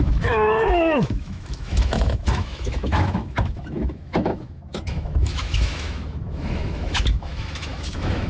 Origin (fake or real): fake